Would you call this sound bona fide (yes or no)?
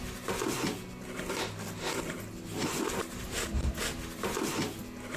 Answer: yes